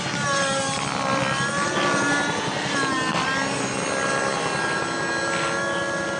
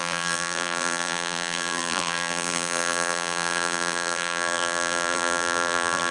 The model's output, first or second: second